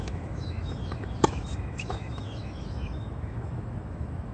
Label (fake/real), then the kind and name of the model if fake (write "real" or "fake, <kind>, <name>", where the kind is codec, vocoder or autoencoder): fake, autoencoder, DAC-VAE